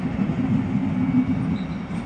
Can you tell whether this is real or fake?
real